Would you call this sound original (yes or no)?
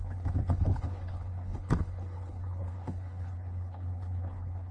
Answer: no